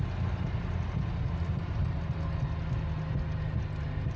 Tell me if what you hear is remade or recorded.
recorded